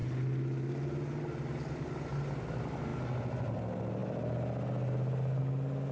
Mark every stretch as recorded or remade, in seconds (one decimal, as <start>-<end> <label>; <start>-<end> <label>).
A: 0.0-5.9 recorded